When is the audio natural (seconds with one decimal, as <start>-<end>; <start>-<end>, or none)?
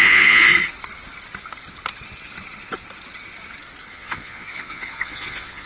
0.5-3.9